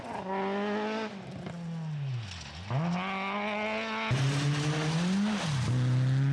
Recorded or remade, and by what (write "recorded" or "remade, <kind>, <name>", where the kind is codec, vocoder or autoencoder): recorded